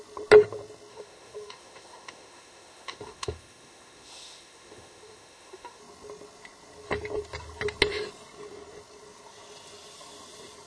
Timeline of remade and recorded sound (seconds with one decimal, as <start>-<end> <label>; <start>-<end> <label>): 0.0-0.9 recorded; 0.9-5.8 remade; 5.8-10.7 recorded